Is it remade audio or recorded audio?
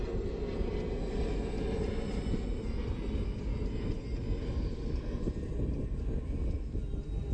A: recorded